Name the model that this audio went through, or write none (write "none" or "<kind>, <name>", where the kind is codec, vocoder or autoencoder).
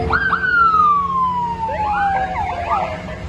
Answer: none